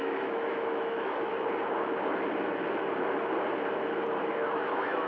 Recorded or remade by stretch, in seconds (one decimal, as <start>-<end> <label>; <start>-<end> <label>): 0.0-1.3 remade; 1.3-4.2 recorded; 4.2-5.1 remade